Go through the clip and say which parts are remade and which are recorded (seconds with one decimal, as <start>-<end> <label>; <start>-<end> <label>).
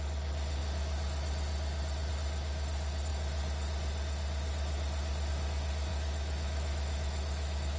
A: 0.0-5.9 recorded; 5.9-7.8 remade